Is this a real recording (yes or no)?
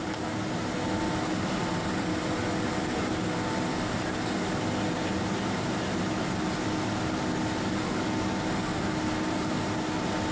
yes